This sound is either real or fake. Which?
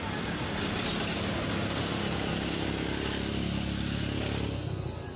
real